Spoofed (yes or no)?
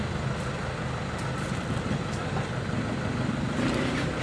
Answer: no